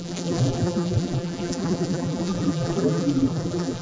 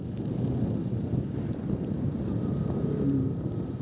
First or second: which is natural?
second